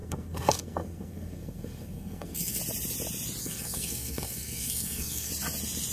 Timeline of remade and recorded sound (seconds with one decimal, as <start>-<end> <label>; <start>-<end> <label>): 0.0-2.6 remade; 2.6-3.4 recorded; 3.4-5.3 remade; 5.3-5.9 recorded